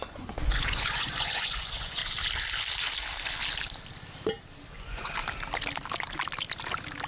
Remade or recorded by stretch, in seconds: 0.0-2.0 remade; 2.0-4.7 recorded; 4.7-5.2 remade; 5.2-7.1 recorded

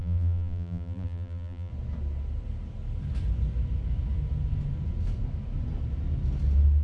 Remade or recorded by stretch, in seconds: 0.0-1.7 remade; 1.7-6.8 recorded

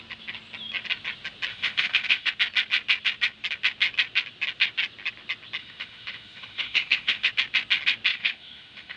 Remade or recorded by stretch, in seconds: 0.0-1.5 recorded; 1.5-2.3 remade; 2.3-5.6 recorded; 5.6-7.3 remade; 7.3-8.1 recorded; 8.1-9.0 remade

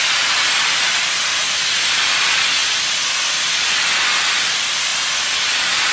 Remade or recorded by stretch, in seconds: 0.0-5.9 recorded

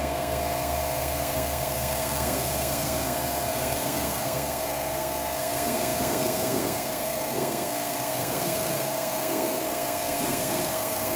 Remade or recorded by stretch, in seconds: 0.0-11.2 remade

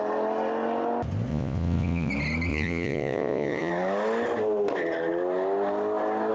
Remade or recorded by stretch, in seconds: 0.0-1.3 recorded; 1.3-2.1 remade; 2.1-2.5 recorded; 2.5-3.7 remade; 3.7-6.3 recorded